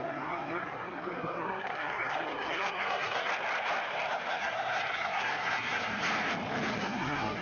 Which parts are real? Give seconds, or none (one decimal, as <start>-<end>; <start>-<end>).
3.3-4.3; 5.9-6.7